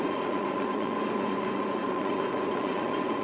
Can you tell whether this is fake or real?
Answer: fake